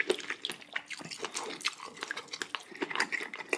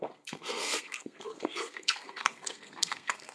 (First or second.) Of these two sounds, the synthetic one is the second